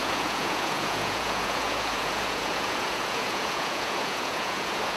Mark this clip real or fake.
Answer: fake